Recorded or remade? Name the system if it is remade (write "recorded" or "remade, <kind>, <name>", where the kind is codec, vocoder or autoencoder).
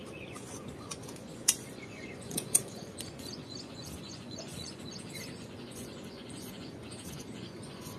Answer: remade, vocoder, Vocos